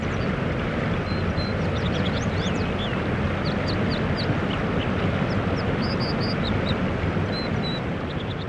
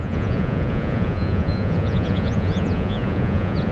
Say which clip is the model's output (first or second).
second